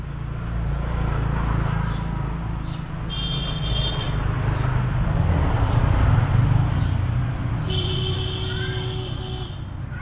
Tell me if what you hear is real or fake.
real